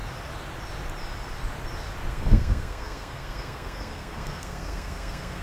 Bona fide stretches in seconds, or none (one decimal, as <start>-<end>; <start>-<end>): 0.0-2.1